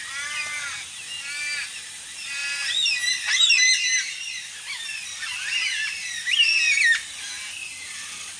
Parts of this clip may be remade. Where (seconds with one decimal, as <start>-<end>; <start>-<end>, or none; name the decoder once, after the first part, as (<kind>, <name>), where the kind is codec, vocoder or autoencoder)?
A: none